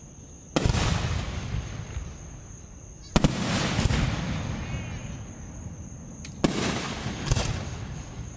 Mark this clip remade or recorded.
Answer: recorded